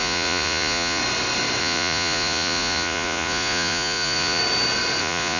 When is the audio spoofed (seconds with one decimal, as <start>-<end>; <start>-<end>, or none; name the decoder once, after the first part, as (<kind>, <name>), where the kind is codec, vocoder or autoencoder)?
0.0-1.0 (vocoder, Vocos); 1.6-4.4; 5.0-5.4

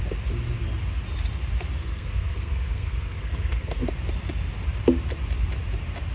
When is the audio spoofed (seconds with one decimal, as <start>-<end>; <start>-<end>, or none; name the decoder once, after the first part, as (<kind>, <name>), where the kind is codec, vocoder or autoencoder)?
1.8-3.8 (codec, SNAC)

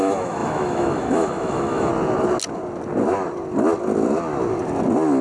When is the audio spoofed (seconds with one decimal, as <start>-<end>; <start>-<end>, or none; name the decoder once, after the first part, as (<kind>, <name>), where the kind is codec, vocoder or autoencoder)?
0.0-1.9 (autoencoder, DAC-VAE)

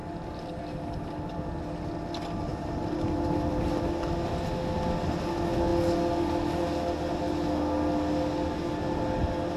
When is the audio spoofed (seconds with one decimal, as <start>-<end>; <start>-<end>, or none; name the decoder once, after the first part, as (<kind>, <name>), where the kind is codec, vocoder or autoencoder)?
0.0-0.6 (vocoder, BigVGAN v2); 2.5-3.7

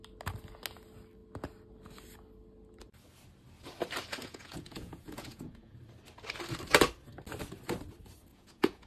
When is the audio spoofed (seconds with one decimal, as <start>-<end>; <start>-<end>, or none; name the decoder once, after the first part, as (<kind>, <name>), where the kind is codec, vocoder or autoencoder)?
4.2-5.8 (vocoder, Vocos); 8.3-8.9

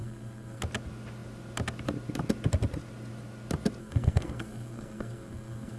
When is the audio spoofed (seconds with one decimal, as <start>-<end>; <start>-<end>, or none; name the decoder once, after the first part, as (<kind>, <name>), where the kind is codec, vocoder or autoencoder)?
0.0-0.6 (codec, SNAC); 3.8-5.8